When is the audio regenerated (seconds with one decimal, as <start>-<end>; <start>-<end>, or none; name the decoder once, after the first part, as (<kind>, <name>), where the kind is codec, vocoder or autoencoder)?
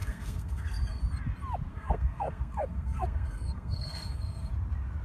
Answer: 0.0-1.0 (codec, SNAC); 1.7-4.5